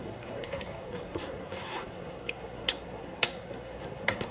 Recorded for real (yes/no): no